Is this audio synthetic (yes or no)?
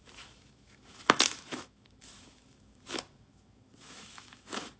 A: yes